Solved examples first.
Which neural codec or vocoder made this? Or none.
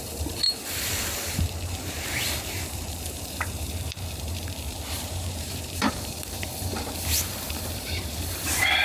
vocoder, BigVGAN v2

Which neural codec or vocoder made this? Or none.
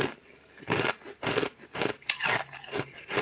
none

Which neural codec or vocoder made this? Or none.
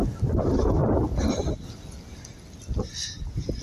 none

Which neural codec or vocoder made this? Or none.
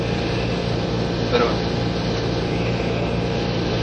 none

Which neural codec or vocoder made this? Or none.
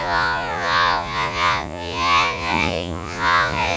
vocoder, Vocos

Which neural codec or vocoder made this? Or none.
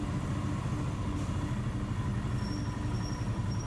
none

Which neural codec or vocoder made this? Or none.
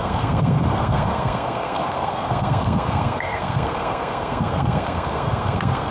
codec, SNAC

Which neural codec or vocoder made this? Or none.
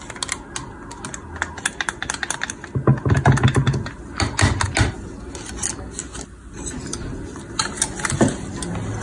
none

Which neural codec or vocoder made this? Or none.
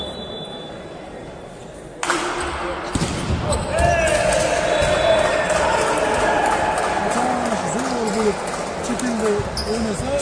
none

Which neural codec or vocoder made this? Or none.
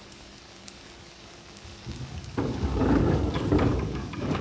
codec, DAC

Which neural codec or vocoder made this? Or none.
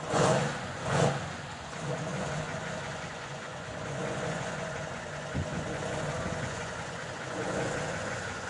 vocoder, Vocos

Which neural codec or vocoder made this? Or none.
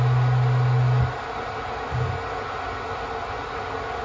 none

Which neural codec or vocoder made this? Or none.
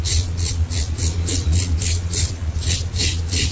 vocoder, Vocos